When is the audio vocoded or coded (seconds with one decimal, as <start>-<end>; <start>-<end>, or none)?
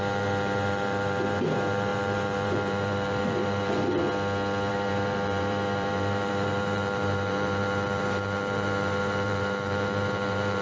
0.0-4.0; 4.7-10.6